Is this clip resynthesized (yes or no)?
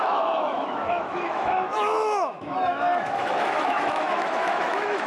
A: yes